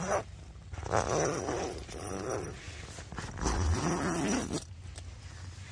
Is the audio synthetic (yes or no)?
no